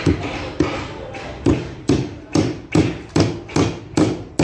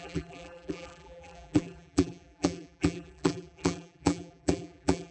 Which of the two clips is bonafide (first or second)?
first